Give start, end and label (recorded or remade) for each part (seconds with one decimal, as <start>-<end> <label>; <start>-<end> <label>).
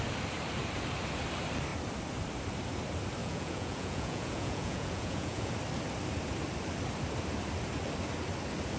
0.0-3.2 recorded; 3.2-5.5 remade; 5.5-8.8 recorded